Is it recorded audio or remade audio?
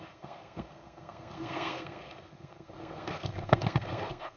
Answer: remade